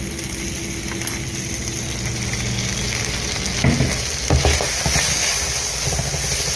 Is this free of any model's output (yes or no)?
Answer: yes